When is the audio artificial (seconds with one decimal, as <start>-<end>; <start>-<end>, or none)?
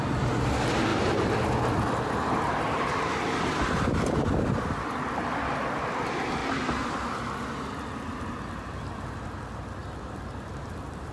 0.9-4.8; 9.8-11.1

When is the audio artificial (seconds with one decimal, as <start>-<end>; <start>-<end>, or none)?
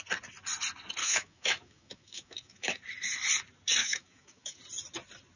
1.0-2.8; 3.8-4.6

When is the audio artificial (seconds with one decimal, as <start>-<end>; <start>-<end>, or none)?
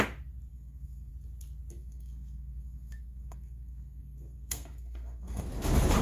0.5-1.1; 1.8-5.4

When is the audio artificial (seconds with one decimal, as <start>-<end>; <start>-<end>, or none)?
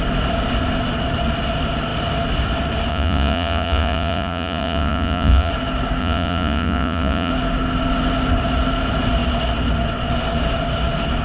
2.9-5.5; 6.0-7.3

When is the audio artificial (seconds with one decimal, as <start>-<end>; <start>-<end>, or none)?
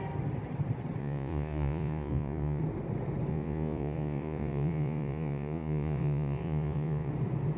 1.0-2.6; 3.3-7.1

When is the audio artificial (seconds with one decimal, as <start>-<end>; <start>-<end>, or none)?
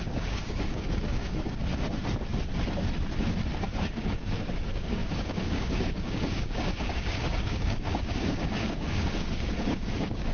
0.0-1.6; 4.0-10.3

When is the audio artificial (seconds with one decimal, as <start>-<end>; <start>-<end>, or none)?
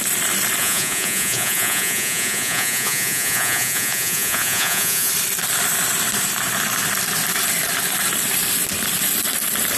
0.6-5.1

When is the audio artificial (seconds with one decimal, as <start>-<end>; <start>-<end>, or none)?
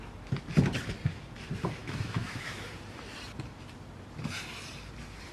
1.8-2.7